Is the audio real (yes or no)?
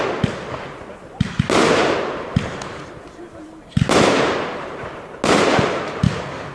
yes